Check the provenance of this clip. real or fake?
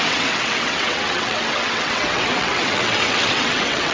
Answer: fake